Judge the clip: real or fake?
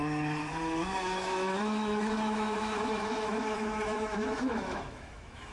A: fake